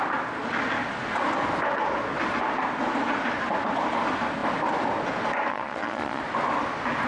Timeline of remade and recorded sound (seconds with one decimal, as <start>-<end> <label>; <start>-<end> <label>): 0.0-5.5 recorded; 5.5-6.2 remade; 6.2-7.1 recorded